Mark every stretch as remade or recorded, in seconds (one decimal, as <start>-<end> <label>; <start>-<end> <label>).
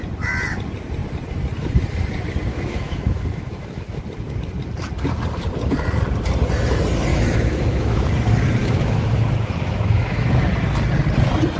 0.0-2.5 recorded; 2.5-4.0 remade; 4.0-7.1 recorded; 7.1-8.1 remade; 8.1-8.6 recorded; 8.6-10.5 remade; 10.5-11.6 recorded